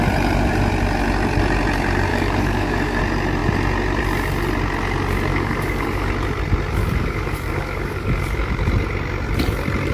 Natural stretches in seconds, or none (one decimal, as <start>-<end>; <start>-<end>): 0.0-2.1; 3.0-5.3; 6.1-6.8; 8.5-9.9